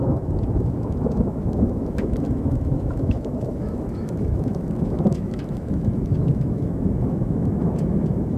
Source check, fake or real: fake